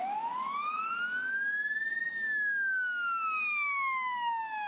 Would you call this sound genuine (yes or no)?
no